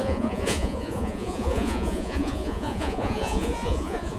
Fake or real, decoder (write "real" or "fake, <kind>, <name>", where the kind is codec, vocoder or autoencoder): fake, vocoder, Vocos